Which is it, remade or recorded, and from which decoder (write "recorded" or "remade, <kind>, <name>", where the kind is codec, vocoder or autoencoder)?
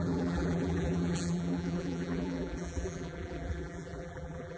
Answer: remade, vocoder, BigVGAN v2